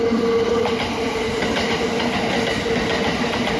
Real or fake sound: real